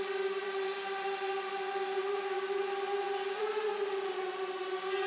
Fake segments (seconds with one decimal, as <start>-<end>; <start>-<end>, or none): 0.4-1.2; 2.0-4.6